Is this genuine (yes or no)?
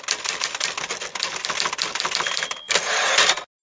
yes